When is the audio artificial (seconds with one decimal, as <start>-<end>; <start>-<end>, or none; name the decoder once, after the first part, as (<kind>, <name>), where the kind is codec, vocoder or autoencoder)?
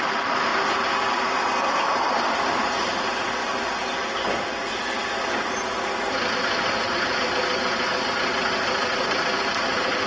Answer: none